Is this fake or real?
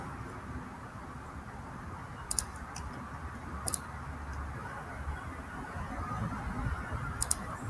real